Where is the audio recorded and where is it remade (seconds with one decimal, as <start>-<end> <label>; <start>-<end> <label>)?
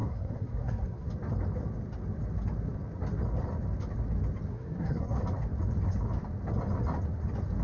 0.0-1.1 remade; 1.1-4.5 recorded; 4.5-5.2 remade; 5.2-7.6 recorded